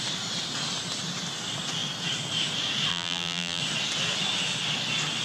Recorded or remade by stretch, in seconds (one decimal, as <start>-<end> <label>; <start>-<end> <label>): 0.0-2.9 recorded; 2.9-3.6 remade; 3.6-5.2 recorded